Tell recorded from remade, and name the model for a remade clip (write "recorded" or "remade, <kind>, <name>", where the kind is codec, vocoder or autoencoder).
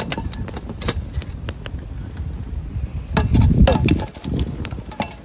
recorded